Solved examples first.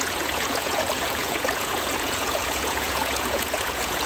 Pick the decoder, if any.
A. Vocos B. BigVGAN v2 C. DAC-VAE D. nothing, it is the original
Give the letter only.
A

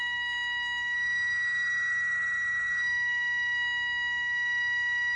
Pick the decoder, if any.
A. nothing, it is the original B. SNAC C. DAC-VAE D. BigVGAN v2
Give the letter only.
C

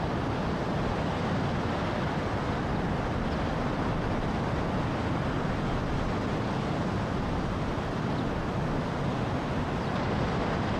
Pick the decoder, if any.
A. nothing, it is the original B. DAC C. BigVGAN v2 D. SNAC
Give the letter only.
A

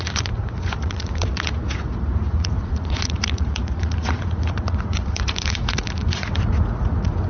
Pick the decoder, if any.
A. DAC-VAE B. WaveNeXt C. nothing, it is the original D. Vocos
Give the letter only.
D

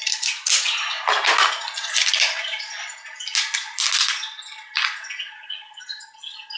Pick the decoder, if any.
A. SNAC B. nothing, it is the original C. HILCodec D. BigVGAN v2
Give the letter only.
B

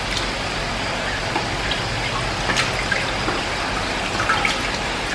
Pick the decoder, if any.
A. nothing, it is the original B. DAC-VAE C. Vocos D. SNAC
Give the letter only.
A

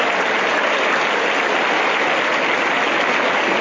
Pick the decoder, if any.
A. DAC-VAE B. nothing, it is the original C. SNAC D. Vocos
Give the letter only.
B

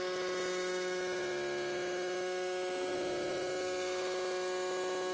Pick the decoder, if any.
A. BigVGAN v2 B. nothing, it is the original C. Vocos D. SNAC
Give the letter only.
B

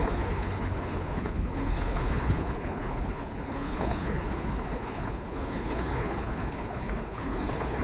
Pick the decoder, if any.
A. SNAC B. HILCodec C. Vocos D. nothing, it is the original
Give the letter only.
B